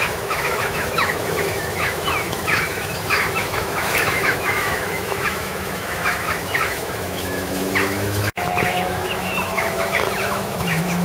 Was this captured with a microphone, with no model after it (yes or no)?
no